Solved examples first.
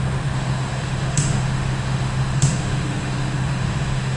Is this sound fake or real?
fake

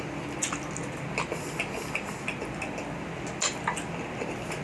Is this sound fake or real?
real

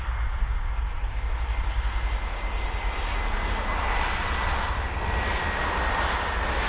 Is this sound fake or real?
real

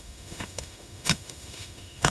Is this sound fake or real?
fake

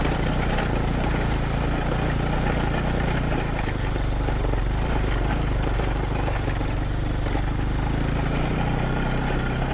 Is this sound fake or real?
real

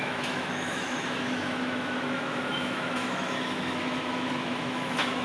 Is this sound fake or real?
fake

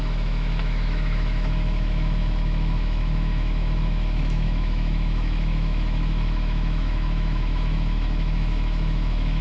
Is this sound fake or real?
fake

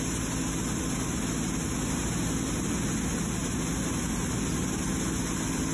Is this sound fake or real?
real